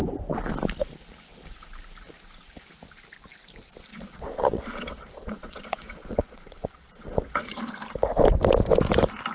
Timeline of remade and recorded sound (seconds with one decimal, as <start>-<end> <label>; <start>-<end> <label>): 0.0-3.9 recorded; 3.9-7.7 remade; 7.7-9.3 recorded